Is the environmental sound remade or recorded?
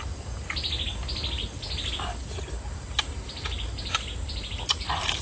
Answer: recorded